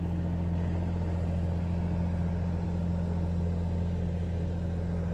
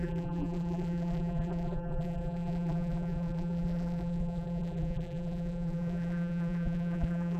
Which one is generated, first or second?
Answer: second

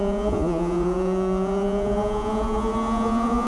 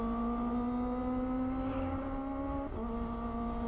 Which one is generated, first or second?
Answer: first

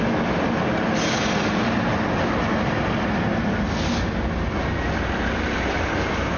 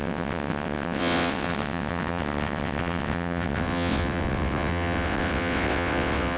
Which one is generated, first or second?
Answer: second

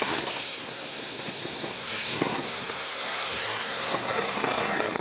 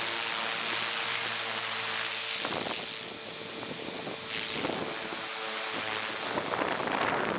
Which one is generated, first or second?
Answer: first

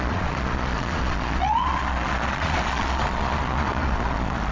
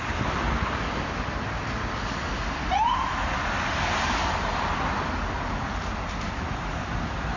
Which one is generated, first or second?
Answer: first